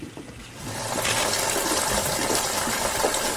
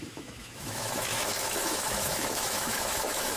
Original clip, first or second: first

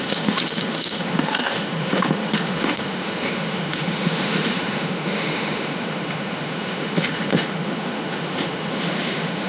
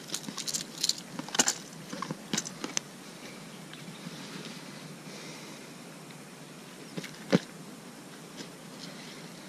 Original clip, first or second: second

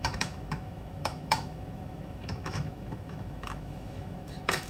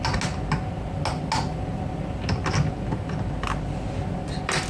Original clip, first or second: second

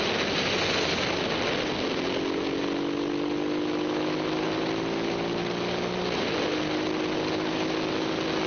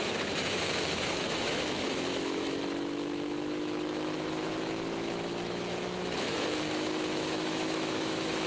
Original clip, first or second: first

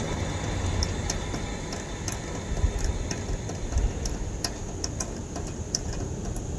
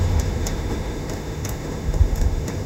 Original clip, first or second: first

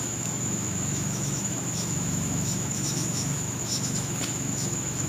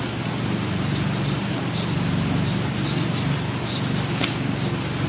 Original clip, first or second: second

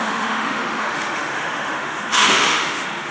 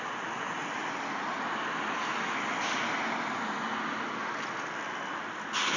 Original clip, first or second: second